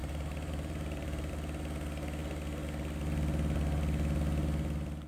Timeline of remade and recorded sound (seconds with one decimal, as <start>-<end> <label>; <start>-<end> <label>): 0.0-1.3 remade; 1.3-5.1 recorded